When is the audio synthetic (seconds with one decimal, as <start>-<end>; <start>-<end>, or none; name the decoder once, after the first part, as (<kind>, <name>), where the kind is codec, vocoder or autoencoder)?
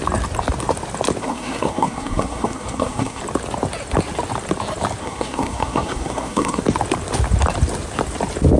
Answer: 1.2-3.2 (codec, SNAC); 5.0-6.6